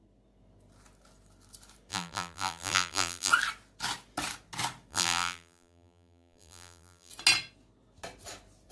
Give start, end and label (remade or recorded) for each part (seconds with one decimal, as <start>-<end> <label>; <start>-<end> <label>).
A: 0.0-1.9 recorded; 1.9-3.3 remade; 3.3-4.9 recorded; 4.9-7.1 remade; 7.1-8.7 recorded